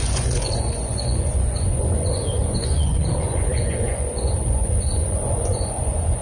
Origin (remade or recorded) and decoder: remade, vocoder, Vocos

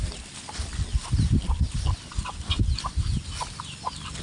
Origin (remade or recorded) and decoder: recorded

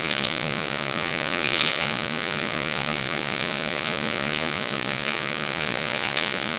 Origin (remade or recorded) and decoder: remade, vocoder, Vocos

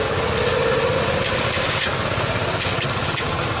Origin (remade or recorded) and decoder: recorded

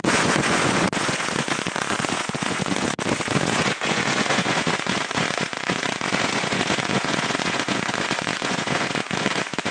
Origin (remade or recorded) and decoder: remade, vocoder, Vocos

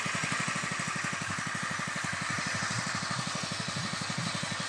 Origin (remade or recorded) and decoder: recorded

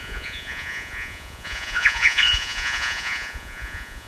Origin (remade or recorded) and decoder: remade, vocoder, Vocos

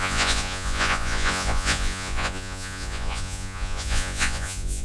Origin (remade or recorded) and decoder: remade, vocoder, Vocos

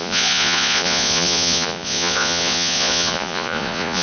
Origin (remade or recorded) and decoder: remade, vocoder, Vocos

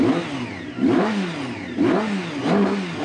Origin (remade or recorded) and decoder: recorded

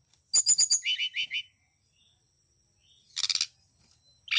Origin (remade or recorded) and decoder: recorded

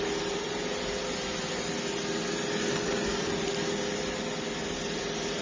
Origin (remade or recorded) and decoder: recorded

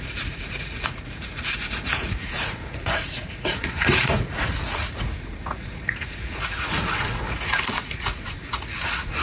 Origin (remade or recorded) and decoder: remade, vocoder, Vocos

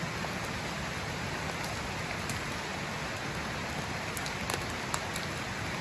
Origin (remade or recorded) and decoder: recorded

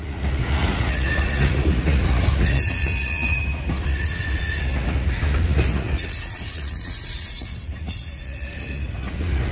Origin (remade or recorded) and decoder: remade, vocoder, Vocos